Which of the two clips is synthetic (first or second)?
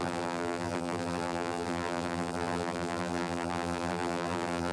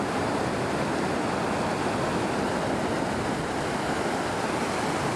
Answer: first